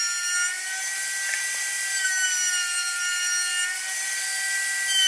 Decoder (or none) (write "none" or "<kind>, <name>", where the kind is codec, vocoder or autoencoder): none